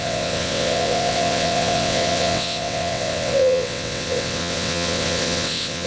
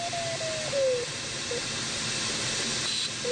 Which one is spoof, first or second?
first